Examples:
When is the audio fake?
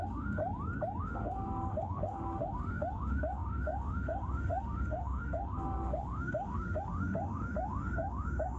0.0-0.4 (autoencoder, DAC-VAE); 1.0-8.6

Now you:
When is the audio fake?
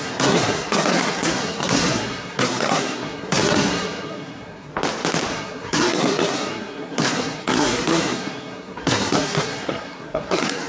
0.0-4.7 (codec, SNAC); 5.3-10.7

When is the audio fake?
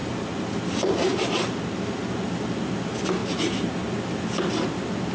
3.2-4.0 (vocoder, BigVGAN v2)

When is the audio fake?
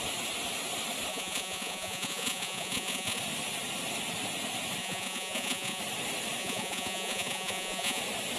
1.1-3.2 (vocoder, Vocos); 4.8-5.8; 6.4-8.0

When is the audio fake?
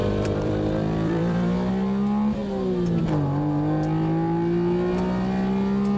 0.0-1.7 (vocoder, BigVGAN v2)